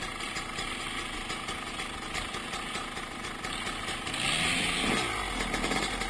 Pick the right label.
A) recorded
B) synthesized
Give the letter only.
A